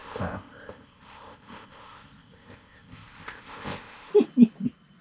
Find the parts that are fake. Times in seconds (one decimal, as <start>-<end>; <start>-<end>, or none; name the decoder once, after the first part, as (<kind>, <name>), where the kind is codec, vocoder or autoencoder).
0.0-4.1 (codec, ZipCodec)